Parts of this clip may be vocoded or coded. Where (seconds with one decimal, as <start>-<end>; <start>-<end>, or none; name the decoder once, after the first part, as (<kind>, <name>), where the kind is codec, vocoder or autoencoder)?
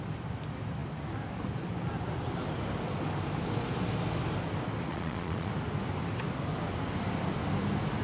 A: 4.9-5.5 (vocoder, Vocos)